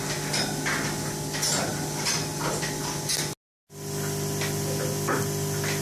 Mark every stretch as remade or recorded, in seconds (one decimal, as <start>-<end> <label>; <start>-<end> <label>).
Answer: 0.0-5.8 recorded